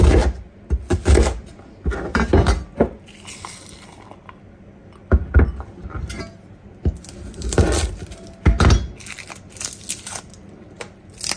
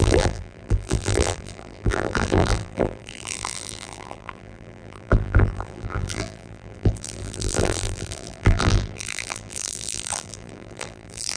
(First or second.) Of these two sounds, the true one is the first